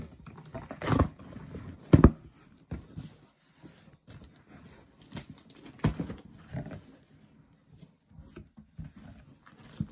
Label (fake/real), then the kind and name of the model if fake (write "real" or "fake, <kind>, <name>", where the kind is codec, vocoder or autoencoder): real